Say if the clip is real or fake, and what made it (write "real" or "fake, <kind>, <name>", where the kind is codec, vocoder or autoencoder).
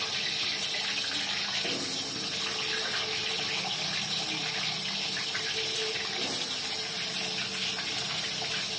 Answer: real